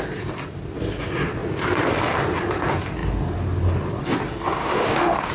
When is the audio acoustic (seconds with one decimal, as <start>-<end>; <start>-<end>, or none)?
0.0-4.6